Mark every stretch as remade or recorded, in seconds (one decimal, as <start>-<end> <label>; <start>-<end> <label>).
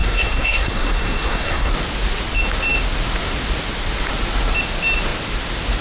0.0-1.7 remade; 1.7-5.8 recorded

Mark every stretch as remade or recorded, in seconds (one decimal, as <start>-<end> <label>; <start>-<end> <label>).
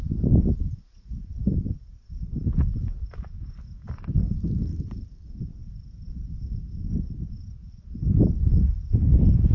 0.0-9.5 recorded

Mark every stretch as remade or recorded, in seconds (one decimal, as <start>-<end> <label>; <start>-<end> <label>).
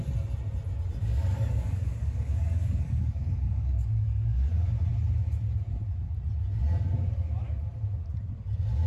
0.0-1.0 recorded; 1.0-4.5 remade; 4.5-8.9 recorded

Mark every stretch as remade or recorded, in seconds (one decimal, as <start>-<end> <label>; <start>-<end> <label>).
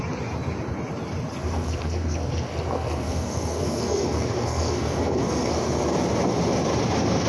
0.0-1.4 recorded; 1.4-5.8 remade; 5.8-7.3 recorded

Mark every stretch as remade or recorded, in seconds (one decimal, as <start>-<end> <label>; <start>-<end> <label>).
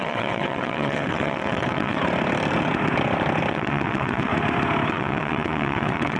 0.0-2.0 remade; 2.0-3.5 recorded; 3.5-4.3 remade; 4.3-4.9 recorded; 4.9-6.2 remade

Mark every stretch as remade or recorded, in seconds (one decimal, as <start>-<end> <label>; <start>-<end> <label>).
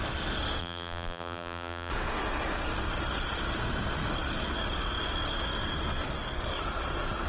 0.0-0.6 recorded; 0.6-1.9 remade; 1.9-7.3 recorded